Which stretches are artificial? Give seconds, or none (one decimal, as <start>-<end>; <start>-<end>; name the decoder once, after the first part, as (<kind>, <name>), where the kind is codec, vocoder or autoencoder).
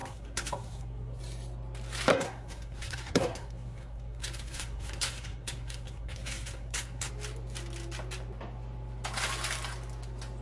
0.0-1.2 (codec, SNAC); 2.1-7.1